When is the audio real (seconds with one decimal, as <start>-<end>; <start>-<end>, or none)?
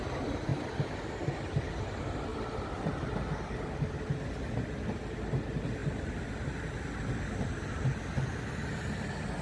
0.0-0.5; 1.1-2.3; 2.9-9.4